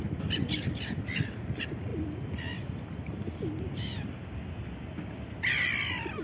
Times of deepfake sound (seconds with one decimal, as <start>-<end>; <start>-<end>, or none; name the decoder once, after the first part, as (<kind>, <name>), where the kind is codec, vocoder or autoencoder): none

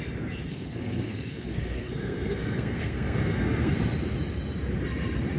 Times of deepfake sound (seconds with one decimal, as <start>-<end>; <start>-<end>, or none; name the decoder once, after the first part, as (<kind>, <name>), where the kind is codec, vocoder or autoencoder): 0.5-3.7 (codec, SNAC)

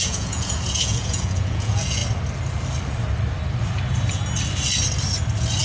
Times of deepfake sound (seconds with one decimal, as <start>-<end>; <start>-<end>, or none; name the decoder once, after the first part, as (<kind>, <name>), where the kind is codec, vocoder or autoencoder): 0.0-2.0 (vocoder, Vocos)

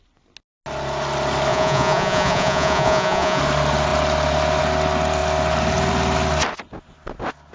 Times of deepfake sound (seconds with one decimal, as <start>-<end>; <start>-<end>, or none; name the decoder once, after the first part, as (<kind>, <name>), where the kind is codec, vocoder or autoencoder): 1.5-3.4 (vocoder, Vocos)

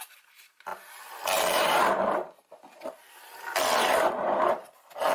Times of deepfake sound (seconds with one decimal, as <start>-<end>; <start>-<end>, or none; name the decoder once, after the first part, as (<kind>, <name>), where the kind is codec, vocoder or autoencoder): none

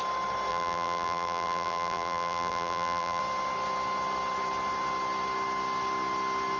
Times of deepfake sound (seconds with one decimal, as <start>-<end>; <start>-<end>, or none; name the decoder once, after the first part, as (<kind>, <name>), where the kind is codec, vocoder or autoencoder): 0.5-3.2 (vocoder, BigVGAN v2)

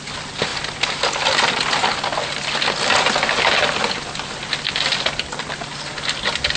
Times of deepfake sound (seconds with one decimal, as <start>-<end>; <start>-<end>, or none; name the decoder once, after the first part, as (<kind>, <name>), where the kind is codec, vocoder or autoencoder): none

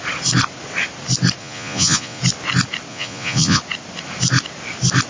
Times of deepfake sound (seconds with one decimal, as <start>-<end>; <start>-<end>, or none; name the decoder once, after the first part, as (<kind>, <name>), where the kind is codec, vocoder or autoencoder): 1.4-2.2 (vocoder, Vocos); 2.9-3.6